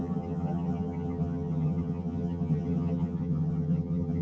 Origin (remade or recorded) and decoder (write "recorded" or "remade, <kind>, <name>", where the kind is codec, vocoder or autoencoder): remade, vocoder, HiFi-GAN